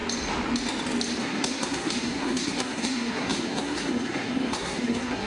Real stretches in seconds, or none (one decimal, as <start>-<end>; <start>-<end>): 0.0-1.2